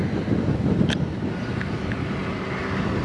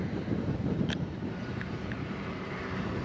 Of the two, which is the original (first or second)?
first